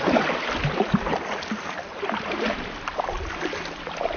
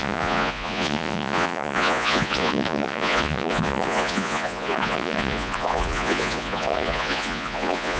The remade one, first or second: second